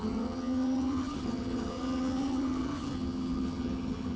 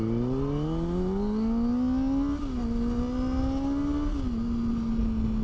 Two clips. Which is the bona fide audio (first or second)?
second